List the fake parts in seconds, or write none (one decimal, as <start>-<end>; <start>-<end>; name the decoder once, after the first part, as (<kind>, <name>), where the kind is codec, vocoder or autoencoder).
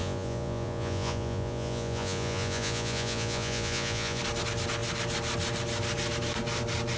0.0-4.2 (vocoder, Vocos)